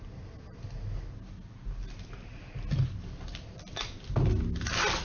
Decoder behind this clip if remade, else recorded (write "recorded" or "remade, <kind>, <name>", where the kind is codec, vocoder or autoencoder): recorded